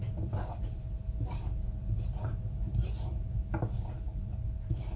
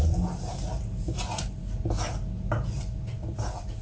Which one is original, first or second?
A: second